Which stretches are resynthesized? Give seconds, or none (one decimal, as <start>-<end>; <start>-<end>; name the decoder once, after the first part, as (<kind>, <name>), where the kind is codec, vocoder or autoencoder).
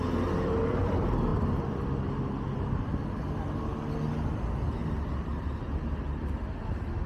none